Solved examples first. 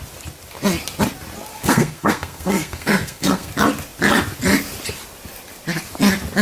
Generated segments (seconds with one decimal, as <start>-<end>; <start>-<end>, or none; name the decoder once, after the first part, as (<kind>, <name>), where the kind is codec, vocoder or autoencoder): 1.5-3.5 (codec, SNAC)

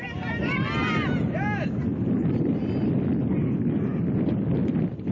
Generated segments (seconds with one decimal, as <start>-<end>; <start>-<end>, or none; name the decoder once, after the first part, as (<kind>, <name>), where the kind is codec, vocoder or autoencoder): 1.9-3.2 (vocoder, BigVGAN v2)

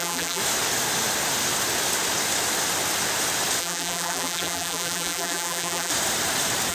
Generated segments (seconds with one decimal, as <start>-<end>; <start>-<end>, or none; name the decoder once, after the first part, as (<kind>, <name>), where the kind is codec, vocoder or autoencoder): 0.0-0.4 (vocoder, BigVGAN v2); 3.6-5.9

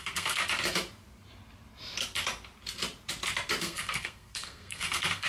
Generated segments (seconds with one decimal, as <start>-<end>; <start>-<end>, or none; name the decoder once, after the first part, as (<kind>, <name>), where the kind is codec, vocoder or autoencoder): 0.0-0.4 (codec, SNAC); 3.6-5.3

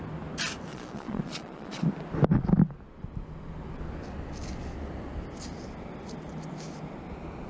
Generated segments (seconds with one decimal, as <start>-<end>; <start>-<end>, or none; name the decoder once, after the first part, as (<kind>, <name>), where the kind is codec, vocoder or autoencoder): 0.7-1.8 (vocoder, Vocos)